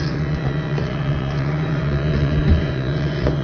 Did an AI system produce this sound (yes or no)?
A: yes